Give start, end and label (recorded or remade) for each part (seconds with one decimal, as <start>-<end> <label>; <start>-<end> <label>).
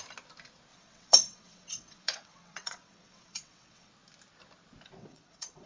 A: 0.0-0.7 recorded; 0.7-3.9 remade; 3.9-5.0 recorded; 5.0-5.7 remade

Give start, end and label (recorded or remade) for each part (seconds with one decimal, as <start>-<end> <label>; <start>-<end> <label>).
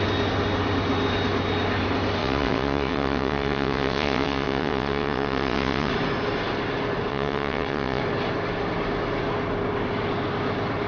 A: 0.0-2.2 recorded; 2.2-5.9 remade; 5.9-7.1 recorded; 7.1-8.0 remade; 8.0-10.9 recorded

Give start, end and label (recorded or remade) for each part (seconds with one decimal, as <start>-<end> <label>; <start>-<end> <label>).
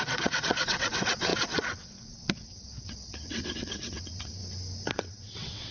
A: 0.0-4.4 remade; 4.4-4.9 recorded; 4.9-5.7 remade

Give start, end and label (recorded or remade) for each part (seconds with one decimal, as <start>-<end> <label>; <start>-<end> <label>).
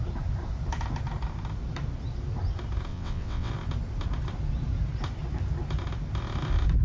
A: 0.0-2.9 recorded; 2.9-3.5 remade; 3.5-6.8 recorded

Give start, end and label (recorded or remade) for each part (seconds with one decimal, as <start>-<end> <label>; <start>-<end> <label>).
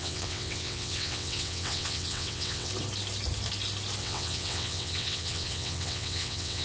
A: 0.0-2.7 remade; 2.7-4.0 recorded; 4.0-6.6 remade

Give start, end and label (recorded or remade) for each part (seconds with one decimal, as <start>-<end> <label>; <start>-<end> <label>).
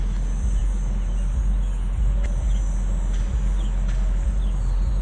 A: 0.0-5.0 recorded